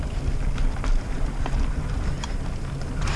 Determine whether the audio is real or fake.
fake